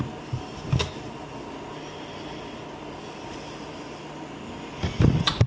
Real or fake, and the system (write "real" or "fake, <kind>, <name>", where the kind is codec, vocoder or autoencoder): real